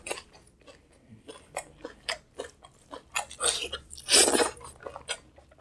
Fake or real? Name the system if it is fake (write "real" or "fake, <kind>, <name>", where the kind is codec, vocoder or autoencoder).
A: real